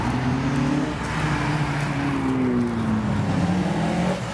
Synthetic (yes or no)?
no